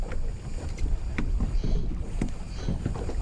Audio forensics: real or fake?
real